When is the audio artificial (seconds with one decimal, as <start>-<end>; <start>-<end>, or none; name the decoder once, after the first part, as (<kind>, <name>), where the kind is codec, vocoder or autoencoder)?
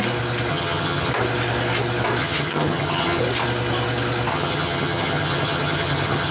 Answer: 0.5-1.1 (vocoder, HiFi-GAN); 2.2-3.2; 4.3-6.3